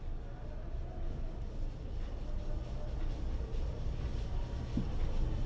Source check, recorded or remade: recorded